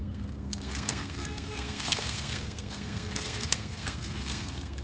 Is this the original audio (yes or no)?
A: no